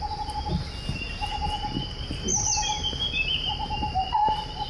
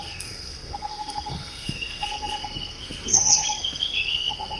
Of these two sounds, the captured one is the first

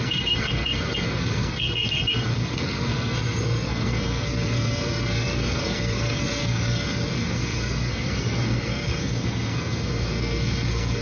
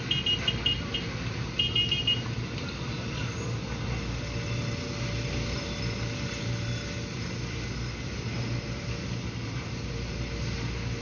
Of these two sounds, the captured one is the second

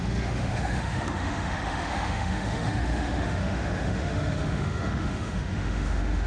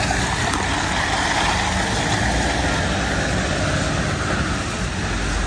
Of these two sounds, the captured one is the second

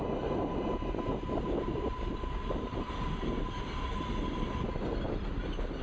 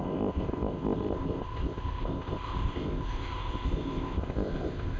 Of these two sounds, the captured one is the first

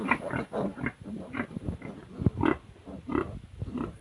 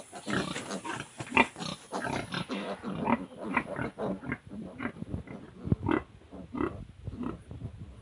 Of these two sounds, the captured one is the second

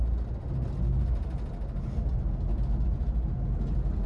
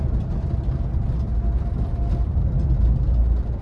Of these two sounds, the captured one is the first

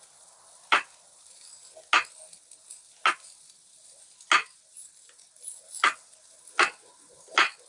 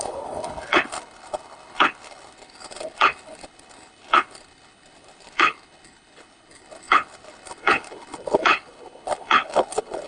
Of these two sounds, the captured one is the first